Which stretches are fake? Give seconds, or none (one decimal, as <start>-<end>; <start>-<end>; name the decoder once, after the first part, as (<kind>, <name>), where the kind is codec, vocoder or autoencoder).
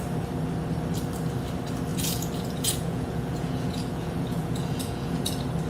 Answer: 1.9-5.3 (vocoder, Vocos)